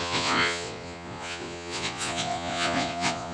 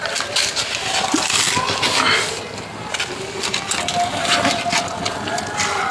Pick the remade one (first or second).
first